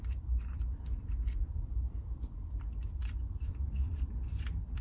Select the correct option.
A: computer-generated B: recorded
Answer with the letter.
A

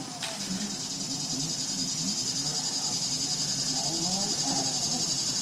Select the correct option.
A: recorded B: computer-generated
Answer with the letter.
A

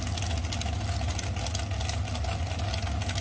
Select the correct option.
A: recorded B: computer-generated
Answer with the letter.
A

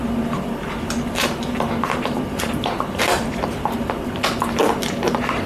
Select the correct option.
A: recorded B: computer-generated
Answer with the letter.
B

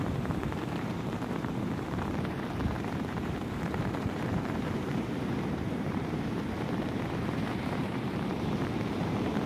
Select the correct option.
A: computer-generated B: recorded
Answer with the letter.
A